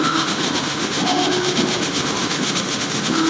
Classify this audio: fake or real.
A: fake